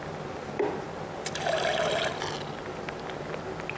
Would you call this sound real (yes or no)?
yes